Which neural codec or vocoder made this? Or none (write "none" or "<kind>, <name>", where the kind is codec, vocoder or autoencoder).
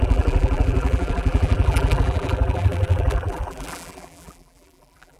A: vocoder, BigVGAN v2